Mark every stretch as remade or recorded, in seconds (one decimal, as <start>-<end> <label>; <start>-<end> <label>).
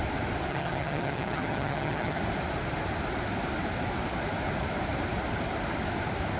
0.0-0.5 recorded; 0.5-2.2 remade; 2.2-6.4 recorded